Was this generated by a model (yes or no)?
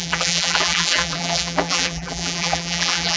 yes